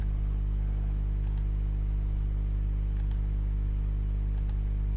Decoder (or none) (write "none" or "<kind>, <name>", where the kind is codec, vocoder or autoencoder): none